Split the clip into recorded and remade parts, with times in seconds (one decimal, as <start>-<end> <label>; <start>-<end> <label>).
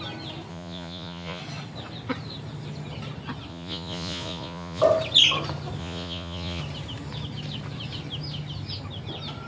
0.0-0.5 recorded; 0.5-1.4 remade; 1.4-3.5 recorded; 3.5-4.8 remade; 4.8-5.8 recorded; 5.8-6.6 remade; 6.6-9.5 recorded